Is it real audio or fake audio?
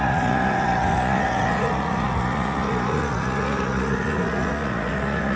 fake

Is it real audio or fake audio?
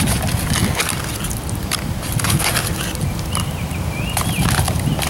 real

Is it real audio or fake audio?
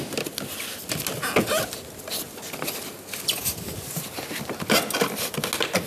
real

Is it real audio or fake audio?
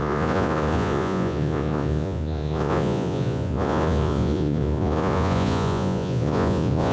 fake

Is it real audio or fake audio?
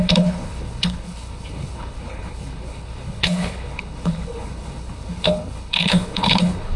fake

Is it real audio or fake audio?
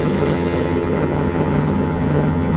fake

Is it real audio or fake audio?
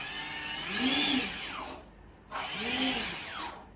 real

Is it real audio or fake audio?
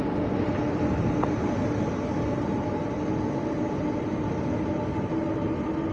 real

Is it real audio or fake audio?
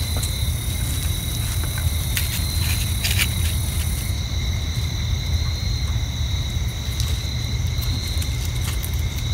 real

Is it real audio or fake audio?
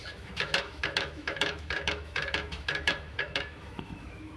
fake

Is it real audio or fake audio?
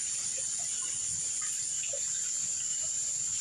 fake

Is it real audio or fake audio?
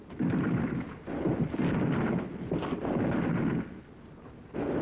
real